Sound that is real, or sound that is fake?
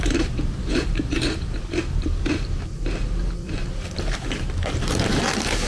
fake